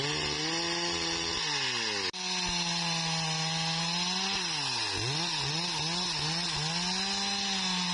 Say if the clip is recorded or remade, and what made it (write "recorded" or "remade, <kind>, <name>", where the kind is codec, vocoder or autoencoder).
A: recorded